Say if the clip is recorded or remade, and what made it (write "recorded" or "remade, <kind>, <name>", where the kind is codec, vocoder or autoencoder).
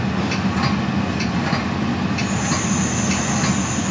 recorded